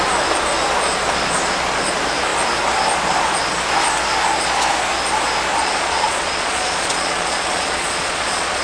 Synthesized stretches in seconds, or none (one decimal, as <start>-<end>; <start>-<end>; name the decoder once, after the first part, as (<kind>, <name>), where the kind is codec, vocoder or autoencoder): 5.6-8.6 (vocoder, Vocos)